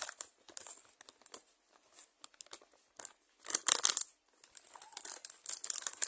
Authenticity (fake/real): real